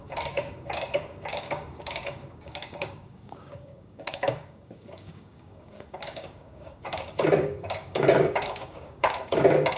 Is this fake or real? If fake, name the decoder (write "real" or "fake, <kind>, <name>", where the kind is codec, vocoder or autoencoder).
fake, codec, DAC